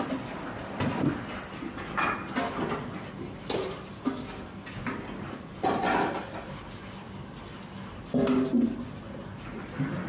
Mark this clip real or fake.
real